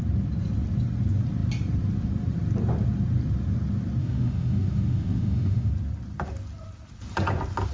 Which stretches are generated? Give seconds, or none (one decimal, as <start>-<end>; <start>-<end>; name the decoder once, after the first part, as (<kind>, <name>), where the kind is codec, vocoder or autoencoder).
4.0-5.7 (autoencoder, DAC-VAE)